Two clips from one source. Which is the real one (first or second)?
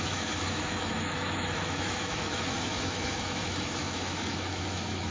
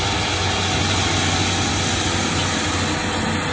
second